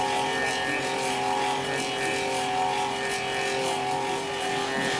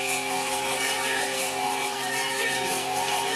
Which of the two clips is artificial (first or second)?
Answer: second